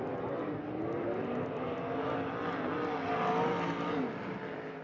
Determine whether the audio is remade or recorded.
recorded